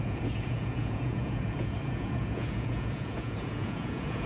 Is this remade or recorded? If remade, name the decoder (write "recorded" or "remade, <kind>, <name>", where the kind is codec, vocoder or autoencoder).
remade, vocoder, Vocos